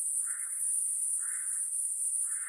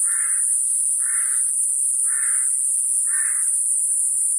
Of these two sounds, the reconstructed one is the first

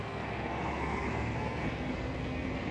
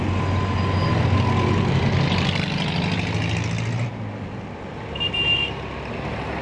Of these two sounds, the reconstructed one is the first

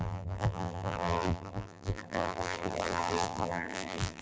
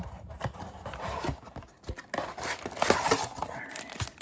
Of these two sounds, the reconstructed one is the first